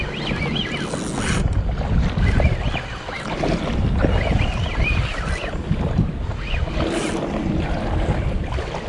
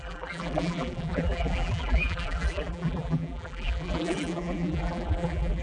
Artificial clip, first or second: second